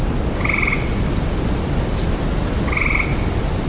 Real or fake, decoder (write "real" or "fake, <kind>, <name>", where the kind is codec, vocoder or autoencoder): real